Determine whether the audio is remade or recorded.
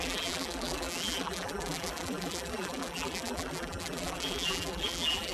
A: remade